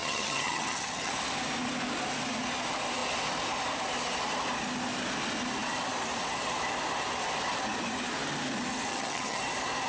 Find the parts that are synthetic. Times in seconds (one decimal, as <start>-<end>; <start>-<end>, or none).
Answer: 0.0-1.1; 8.9-9.4